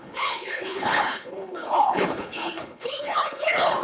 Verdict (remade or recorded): remade